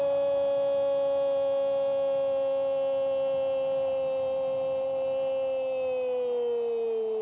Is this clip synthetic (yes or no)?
no